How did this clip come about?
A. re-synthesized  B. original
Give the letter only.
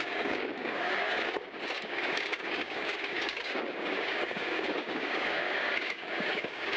A